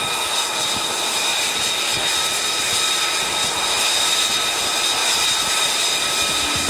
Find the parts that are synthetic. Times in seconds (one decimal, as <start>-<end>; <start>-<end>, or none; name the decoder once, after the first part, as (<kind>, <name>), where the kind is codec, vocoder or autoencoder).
1.3-3.3 (vocoder, BigVGAN v2); 5.0-5.8